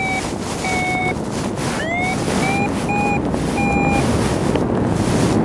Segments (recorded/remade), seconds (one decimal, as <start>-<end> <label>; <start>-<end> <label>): 0.0-5.4 recorded